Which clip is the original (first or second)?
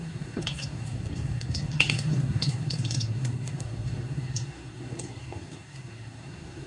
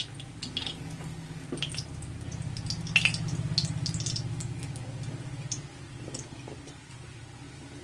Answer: second